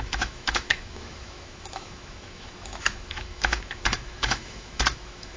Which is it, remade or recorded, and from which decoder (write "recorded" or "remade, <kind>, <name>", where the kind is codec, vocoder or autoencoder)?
remade, autoencoder, DAC-VAE